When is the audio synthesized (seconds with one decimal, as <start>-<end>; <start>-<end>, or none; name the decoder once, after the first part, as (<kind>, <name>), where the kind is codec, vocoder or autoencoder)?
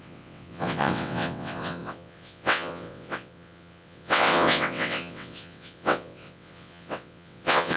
0.0-7.8 (vocoder, WaveNeXt)